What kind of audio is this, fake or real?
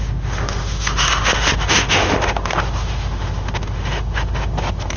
fake